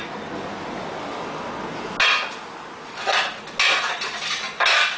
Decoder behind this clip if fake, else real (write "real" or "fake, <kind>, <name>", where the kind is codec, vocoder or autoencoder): real